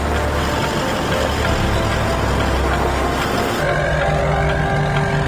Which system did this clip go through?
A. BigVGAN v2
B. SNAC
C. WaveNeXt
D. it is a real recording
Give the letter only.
D